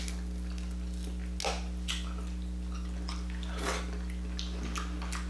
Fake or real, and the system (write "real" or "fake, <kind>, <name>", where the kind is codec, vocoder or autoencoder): real